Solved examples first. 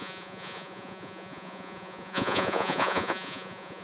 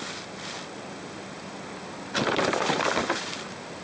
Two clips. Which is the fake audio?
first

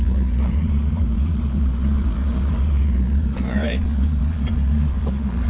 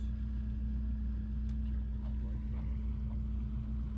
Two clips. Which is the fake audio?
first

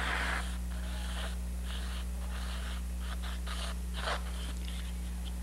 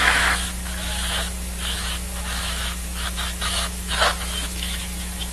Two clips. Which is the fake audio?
second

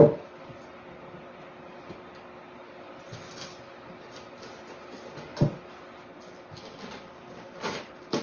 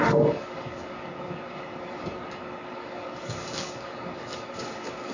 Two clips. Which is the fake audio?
second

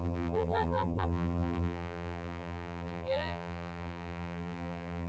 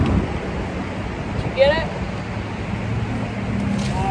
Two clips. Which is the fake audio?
first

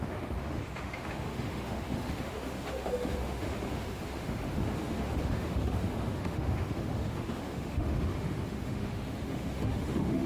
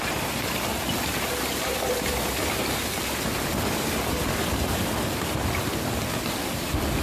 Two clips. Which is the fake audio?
first